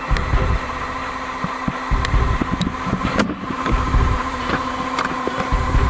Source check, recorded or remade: remade